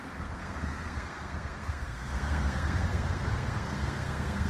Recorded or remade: remade